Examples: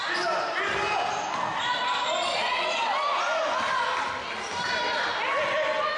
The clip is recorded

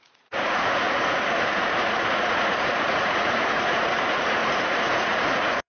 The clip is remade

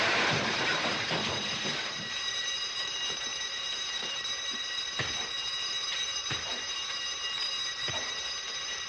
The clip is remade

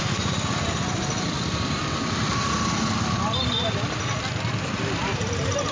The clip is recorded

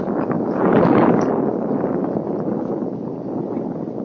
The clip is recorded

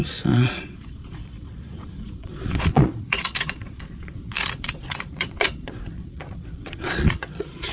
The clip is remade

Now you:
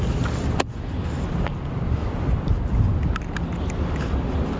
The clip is recorded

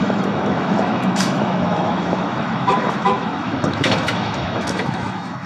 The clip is remade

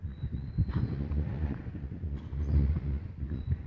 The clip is remade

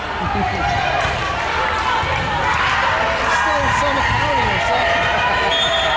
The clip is recorded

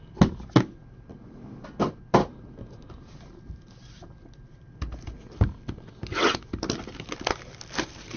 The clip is remade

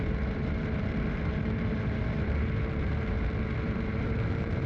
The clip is remade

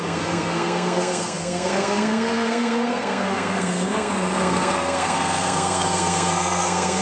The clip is remade